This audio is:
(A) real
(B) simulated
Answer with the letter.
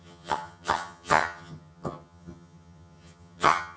B